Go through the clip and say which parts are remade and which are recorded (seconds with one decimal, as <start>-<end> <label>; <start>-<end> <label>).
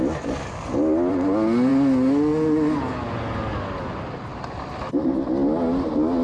0.0-6.2 recorded